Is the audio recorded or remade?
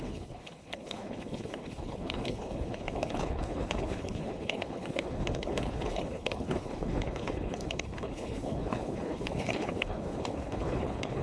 remade